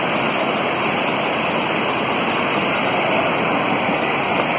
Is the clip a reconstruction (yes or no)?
no